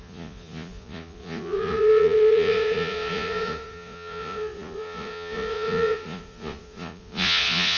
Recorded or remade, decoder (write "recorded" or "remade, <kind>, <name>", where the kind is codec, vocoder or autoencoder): remade, vocoder, Vocos